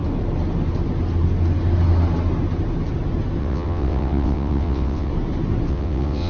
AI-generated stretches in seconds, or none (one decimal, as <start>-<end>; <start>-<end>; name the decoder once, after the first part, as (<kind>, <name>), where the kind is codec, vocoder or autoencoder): 3.4-5.1 (vocoder, WaveNeXt); 5.7-6.3